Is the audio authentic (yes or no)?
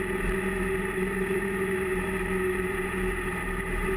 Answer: no